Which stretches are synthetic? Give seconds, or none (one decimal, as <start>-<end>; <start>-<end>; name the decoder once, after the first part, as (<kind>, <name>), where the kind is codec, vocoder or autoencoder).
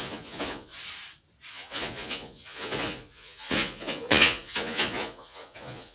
0.0-0.7 (vocoder, Vocos); 1.5-5.9